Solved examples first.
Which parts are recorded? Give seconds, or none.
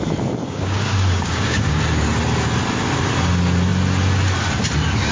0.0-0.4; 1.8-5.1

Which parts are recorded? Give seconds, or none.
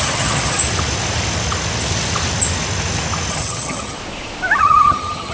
0.6-3.3; 4.0-4.6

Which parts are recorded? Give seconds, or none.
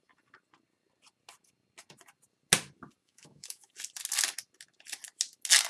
0.0-3.0; 3.7-5.7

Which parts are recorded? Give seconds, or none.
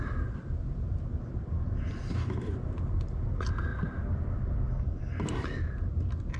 0.0-6.4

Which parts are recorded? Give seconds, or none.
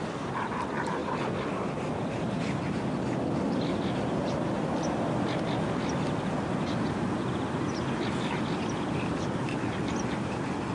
0.0-1.0; 2.4-10.7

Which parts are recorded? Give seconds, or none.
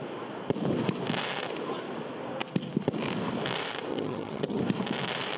0.0-3.9; 4.6-5.4